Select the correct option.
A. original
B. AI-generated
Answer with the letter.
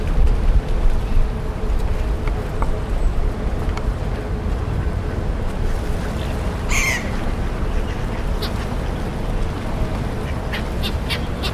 A